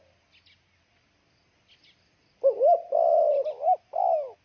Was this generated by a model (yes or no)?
no